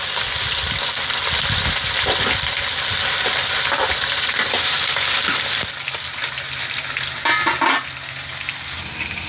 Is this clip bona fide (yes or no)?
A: yes